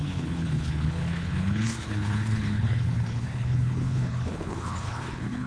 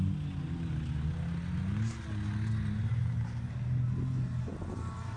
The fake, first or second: first